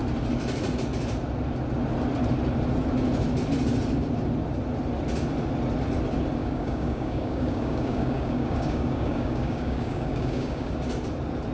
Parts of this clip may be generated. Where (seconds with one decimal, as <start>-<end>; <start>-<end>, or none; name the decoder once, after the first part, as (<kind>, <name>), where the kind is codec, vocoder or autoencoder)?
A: 6.4-10.7 (codec, DAC)